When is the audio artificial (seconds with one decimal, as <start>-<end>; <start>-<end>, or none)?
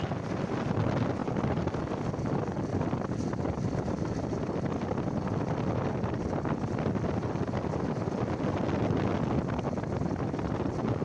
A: none